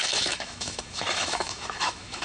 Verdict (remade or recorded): remade